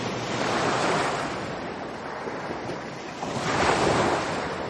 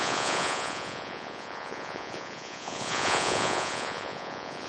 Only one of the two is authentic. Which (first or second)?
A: first